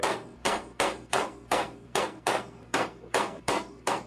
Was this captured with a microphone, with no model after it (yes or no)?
no